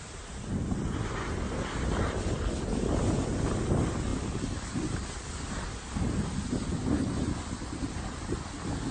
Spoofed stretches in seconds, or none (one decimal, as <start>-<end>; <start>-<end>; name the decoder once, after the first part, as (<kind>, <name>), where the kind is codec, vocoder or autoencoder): none